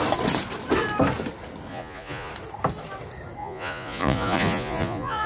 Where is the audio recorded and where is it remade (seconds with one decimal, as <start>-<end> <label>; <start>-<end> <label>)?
0.0-1.7 recorded; 1.7-2.3 remade; 2.3-3.4 recorded; 3.4-5.3 remade